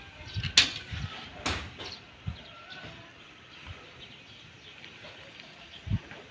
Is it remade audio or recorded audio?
recorded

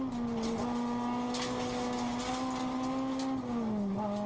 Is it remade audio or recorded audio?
recorded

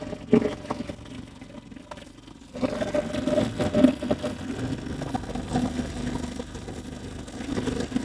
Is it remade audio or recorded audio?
recorded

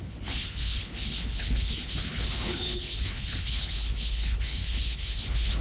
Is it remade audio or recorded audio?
remade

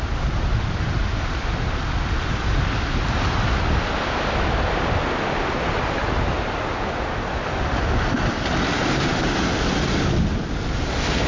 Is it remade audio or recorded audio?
recorded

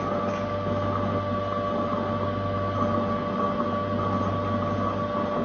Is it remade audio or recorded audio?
recorded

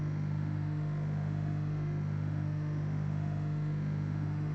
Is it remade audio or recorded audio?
remade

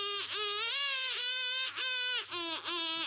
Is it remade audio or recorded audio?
recorded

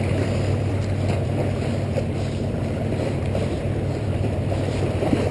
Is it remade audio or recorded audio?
remade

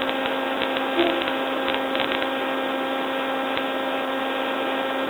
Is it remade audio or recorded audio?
recorded